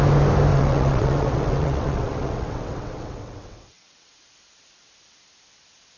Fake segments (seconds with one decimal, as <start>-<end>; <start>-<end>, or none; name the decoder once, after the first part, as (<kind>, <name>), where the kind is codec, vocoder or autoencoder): 0.5-4.1 (vocoder, WaveNeXt)

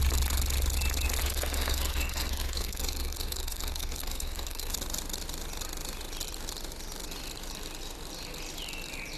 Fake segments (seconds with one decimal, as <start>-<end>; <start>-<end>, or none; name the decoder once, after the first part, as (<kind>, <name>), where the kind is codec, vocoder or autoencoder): 1.2-4.7 (codec, SNAC)

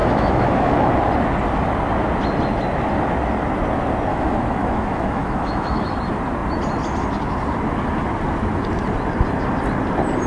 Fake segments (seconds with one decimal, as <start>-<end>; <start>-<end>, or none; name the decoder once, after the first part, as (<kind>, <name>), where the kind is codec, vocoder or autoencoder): 0.0-0.9 (autoencoder, DAC-VAE); 4.1-5.9

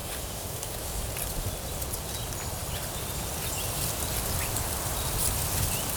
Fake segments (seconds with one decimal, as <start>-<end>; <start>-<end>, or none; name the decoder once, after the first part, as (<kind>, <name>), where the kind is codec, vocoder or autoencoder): 0.0-1.1 (codec, DAC)